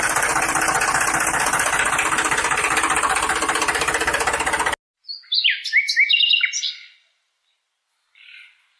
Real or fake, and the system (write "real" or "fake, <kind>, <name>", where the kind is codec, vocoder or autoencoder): real